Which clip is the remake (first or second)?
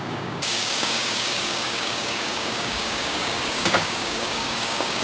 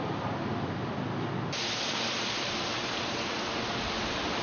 first